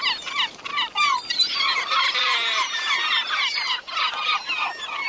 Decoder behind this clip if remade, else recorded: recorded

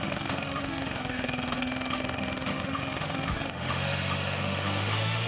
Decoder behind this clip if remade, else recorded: remade, autoencoder, DAC-VAE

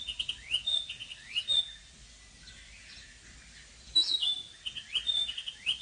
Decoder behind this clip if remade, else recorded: recorded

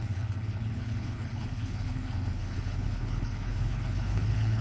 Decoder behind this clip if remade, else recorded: remade, codec, HILCodec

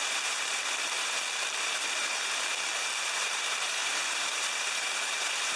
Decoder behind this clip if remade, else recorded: remade, vocoder, BigVGAN v2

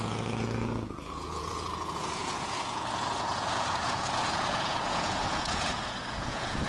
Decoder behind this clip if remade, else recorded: remade, vocoder, Vocos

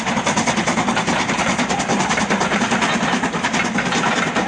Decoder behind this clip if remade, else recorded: recorded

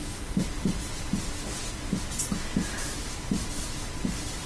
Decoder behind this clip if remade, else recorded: recorded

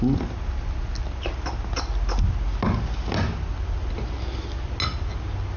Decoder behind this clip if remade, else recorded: recorded